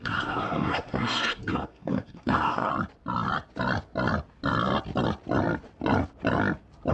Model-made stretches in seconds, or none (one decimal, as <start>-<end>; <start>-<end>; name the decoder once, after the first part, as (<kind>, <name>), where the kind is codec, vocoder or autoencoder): 0.0-2.7 (codec, SNAC)